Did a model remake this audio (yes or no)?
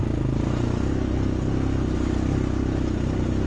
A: no